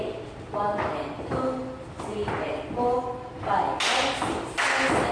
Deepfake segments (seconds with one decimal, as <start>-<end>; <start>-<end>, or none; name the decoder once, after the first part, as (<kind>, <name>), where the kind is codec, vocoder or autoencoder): none